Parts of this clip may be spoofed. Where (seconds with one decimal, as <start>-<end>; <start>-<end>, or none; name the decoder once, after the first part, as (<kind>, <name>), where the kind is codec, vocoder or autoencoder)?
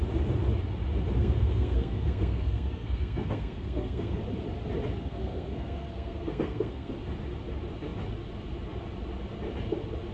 1.2-4.2 (codec, SNAC); 5.0-6.9